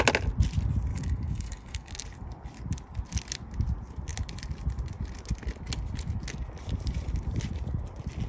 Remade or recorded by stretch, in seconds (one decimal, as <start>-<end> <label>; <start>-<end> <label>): 0.0-0.9 recorded; 0.9-1.9 remade; 1.9-8.3 recorded